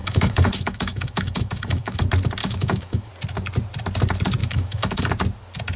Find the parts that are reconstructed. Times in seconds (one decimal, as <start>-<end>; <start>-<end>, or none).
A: 0.0-2.0; 2.4-3.1; 4.4-5.0